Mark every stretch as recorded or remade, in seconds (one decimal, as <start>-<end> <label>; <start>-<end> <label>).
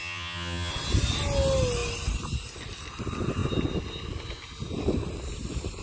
0.0-0.7 remade; 0.7-5.8 recorded